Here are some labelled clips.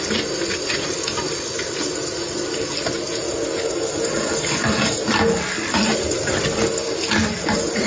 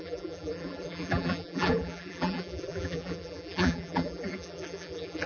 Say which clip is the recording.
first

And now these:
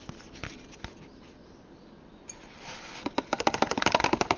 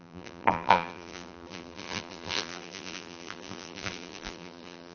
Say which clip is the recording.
first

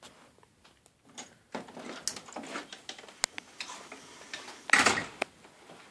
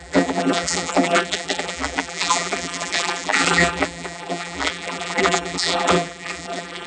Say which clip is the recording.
first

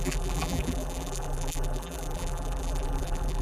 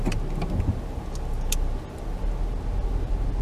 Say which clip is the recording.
second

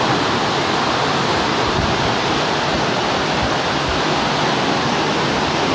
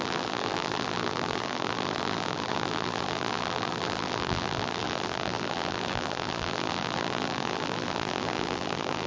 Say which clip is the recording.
first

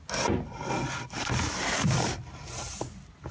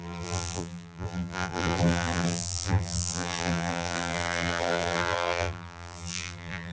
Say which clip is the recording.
first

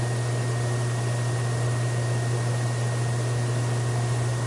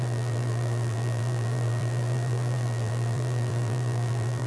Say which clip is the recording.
first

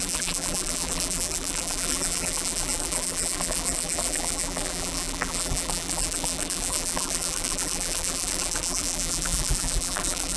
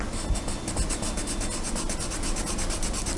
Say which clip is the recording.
second